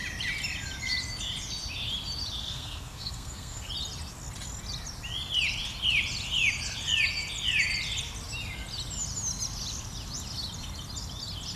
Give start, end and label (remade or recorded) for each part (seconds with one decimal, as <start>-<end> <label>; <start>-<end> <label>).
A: 0.0-2.4 recorded; 2.4-3.7 remade; 3.7-11.6 recorded